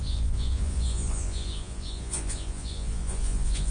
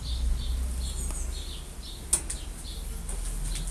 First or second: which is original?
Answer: second